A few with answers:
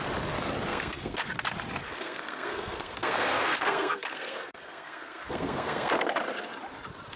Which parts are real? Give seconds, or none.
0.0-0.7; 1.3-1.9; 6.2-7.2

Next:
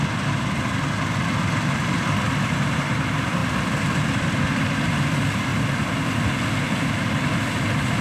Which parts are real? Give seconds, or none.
0.0-8.0

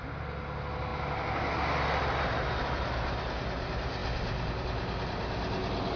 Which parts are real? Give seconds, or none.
0.0-6.0

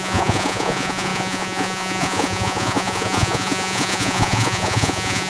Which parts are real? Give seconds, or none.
none